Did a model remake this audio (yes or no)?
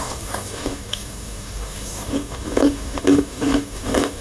yes